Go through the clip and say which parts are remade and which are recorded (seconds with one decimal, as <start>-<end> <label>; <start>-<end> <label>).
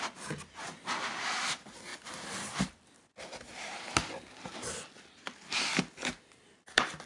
0.0-7.1 recorded